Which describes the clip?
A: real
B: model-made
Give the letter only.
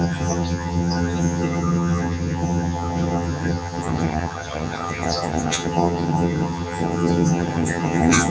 B